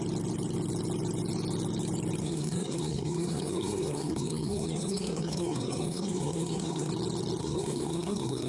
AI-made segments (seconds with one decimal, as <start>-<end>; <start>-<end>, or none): 2.2-6.9; 7.4-8.5